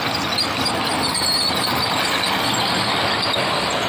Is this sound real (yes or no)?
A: yes